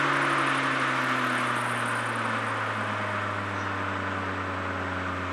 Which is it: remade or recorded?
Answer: recorded